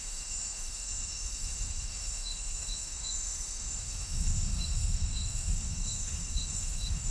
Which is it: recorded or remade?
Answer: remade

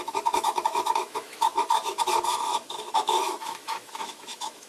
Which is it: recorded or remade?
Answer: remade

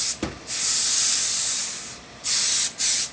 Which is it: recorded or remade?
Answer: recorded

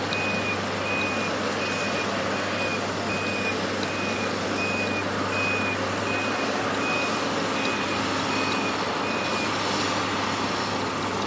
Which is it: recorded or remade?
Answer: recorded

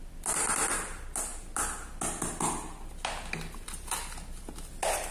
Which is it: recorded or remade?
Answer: recorded